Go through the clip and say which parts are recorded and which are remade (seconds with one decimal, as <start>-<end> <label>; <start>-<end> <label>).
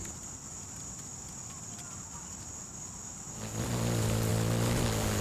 0.0-5.2 recorded